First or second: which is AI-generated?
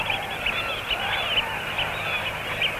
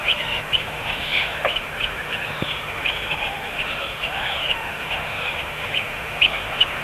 second